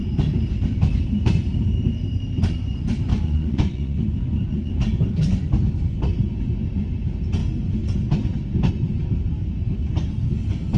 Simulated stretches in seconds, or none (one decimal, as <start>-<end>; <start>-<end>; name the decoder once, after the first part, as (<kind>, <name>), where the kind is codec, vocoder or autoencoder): 3.1-4.7 (vocoder, Vocos)

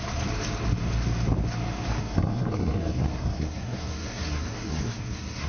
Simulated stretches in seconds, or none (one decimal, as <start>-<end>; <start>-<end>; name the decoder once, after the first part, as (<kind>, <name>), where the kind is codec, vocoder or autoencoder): 1.9-5.5 (codec, SNAC)

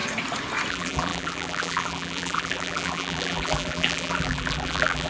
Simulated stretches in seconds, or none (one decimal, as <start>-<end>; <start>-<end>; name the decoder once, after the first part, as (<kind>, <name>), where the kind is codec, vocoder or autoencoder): 0.7-5.1 (vocoder, BigVGAN v2)

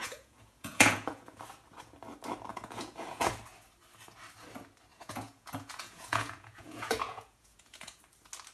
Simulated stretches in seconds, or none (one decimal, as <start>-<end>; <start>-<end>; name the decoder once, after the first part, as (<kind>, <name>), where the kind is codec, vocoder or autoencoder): 0.0-1.4 (vocoder, Vocos); 2.5-3.3; 4.9-8.0

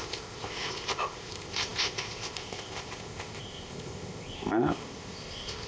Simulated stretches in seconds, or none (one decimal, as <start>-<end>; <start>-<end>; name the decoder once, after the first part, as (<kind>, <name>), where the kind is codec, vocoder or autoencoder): 0.0-5.7 (codec, ZipCodec)

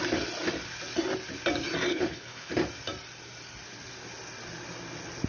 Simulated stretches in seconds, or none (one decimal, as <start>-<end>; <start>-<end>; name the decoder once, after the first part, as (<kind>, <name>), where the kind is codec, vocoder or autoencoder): 1.9-2.5 (codec, HILCodec)